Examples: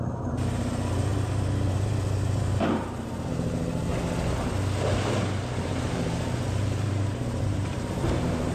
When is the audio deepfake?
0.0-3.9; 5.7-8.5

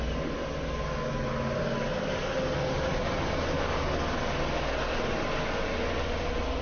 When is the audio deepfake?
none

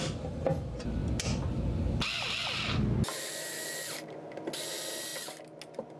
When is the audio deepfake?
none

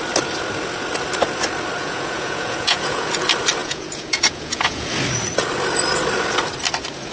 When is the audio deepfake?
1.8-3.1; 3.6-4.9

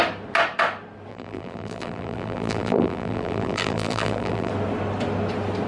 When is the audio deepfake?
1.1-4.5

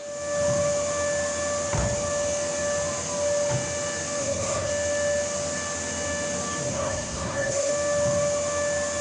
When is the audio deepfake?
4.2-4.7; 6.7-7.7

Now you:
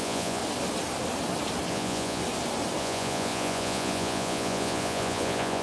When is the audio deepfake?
0.0-0.4; 1.7-2.2; 2.8-5.6